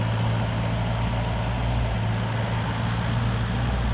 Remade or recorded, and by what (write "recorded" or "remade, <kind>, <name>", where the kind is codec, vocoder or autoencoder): recorded